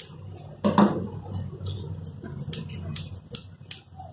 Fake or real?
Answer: real